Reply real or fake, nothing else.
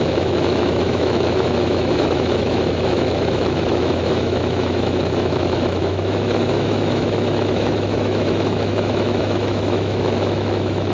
fake